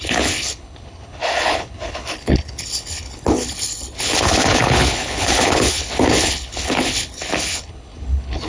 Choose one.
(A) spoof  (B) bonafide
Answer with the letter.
A